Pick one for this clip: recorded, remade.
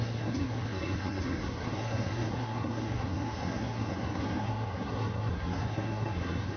remade